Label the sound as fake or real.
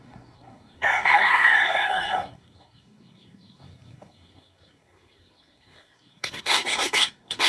fake